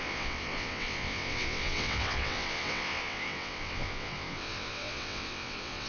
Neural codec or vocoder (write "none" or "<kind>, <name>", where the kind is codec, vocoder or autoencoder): vocoder, WaveNeXt